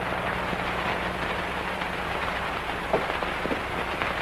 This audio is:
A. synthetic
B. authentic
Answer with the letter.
A